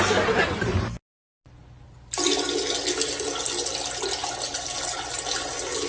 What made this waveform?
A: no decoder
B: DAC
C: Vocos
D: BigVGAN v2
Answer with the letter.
A